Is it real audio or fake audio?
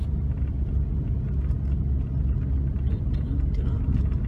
real